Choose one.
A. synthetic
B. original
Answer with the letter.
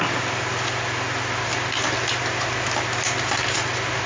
B